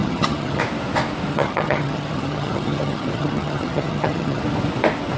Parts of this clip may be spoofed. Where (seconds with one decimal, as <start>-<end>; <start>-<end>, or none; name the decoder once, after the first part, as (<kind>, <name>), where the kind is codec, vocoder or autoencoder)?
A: 0.0-0.6 (vocoder, HiFi-GAN); 1.3-4.4